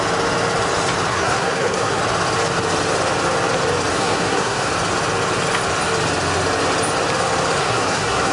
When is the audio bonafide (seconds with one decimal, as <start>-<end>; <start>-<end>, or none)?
0.0-1.1; 2.0-3.9; 4.7-7.6